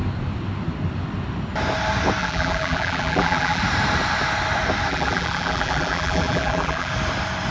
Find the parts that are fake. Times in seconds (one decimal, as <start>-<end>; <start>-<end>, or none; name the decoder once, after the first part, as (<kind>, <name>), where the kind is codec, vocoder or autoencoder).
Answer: 2.2-3.6 (vocoder, BigVGAN v2); 4.9-6.9